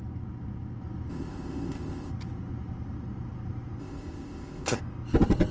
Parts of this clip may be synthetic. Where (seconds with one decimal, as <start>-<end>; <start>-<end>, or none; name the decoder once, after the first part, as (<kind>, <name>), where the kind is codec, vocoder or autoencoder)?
1.1-2.1 (codec, ZipCodec); 3.8-4.8